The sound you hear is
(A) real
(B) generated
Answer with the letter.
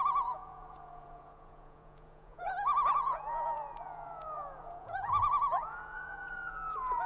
B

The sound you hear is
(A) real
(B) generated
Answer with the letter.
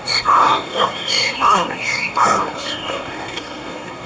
B